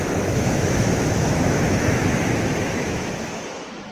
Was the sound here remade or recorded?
remade